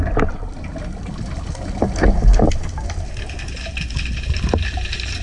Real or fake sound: real